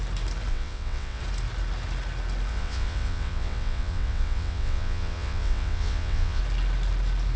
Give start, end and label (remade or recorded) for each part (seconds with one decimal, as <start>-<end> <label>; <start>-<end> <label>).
0.0-0.5 recorded; 0.5-1.2 remade; 1.2-2.5 recorded; 2.5-6.4 remade; 6.4-7.4 recorded